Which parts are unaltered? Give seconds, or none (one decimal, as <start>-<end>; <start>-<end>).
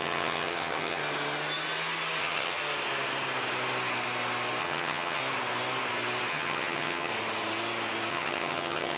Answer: 1.0-2.2; 2.6-4.6; 5.2-6.3; 7.1-8.1